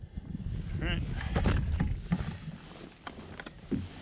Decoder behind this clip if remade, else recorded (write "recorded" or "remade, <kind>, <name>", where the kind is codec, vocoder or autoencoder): recorded